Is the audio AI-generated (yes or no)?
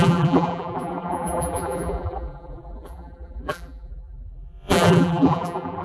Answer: yes